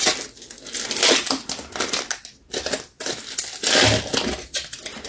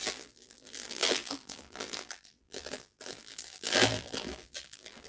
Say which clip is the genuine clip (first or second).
first